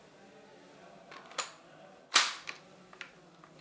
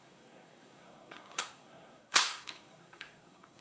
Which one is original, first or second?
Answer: first